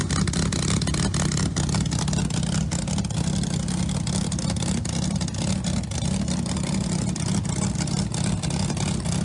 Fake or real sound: real